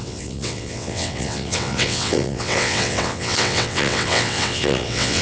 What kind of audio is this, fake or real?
fake